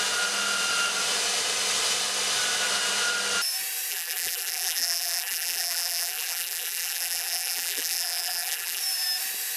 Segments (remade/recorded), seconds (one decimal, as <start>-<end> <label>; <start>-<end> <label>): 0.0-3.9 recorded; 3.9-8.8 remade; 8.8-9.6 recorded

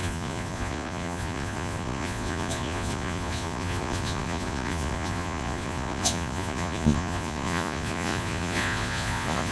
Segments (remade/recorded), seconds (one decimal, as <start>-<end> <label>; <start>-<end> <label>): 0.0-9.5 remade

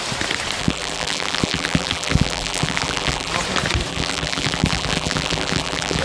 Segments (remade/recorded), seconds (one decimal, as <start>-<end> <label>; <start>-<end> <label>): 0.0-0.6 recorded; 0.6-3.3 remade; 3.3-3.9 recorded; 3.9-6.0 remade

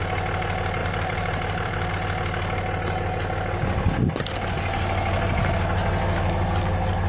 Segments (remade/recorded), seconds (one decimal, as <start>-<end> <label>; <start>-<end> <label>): 0.0-0.8 recorded; 0.8-1.9 remade; 1.9-7.1 recorded

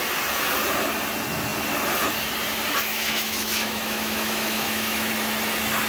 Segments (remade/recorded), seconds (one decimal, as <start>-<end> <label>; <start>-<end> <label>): 0.0-2.9 recorded; 2.9-5.1 remade; 5.1-5.9 recorded